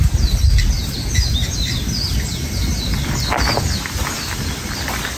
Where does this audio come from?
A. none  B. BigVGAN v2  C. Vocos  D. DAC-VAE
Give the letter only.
A